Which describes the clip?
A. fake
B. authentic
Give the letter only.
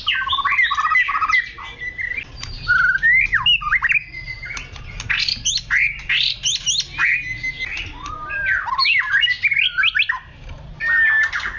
B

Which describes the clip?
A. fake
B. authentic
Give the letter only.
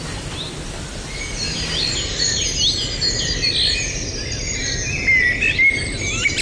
B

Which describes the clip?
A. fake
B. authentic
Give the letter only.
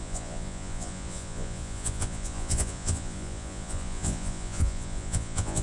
A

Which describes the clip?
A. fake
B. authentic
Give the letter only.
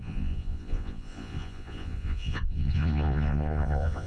A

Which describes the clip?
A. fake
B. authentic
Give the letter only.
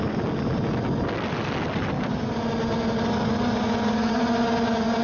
B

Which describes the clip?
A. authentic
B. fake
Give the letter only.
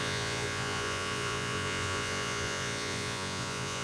B